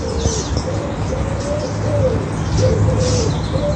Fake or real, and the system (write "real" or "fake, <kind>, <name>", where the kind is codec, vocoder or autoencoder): real